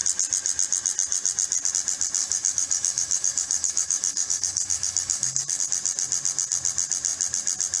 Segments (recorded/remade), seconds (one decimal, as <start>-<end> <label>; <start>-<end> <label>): 0.0-2.2 recorded; 2.2-5.6 remade; 5.6-7.8 recorded